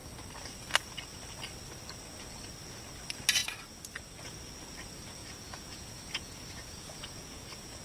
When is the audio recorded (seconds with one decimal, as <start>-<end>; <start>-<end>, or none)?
0.0-5.2